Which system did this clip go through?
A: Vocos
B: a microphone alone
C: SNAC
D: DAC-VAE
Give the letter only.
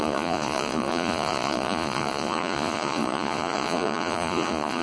A